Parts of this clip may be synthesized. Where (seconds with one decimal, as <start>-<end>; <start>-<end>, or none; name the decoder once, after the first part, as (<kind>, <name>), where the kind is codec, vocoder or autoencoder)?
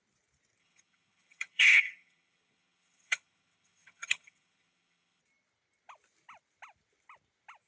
0.6-5.2 (vocoder, HiFi-GAN)